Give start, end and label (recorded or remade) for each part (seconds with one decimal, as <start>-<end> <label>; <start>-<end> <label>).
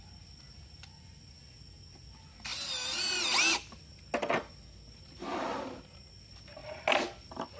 0.0-7.6 recorded